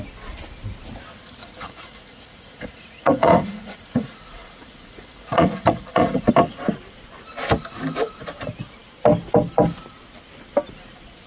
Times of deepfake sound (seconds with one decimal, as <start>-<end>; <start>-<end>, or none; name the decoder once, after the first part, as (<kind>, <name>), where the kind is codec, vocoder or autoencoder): 1.4-6.3 (vocoder, Vocos)

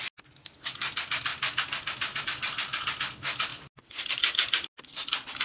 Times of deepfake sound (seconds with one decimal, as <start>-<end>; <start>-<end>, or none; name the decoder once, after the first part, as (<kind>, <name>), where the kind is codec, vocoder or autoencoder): none

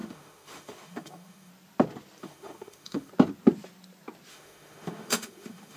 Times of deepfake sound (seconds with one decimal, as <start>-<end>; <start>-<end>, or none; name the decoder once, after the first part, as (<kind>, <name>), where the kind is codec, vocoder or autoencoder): 0.0-1.5 (autoencoder, DAC-VAE); 2.2-3.1; 4.3-5.8

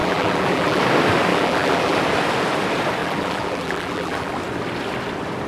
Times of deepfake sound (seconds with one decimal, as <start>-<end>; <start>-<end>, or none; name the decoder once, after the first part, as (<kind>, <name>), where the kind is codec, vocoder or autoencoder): 0.0-0.8 (vocoder, BigVGAN v2); 1.3-2.0; 3.0-4.3

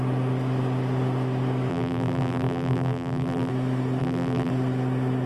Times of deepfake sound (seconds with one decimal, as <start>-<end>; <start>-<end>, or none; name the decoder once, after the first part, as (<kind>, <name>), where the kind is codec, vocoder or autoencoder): 1.7-3.5 (vocoder, BigVGAN v2); 4.0-4.5

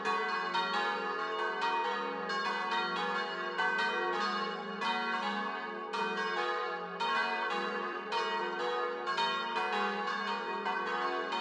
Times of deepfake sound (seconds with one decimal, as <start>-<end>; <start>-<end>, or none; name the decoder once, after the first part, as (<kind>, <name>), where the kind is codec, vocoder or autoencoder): 7.2-8.1 (vocoder, BigVGAN v2)